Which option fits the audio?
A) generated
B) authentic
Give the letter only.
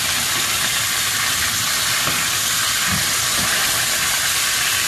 B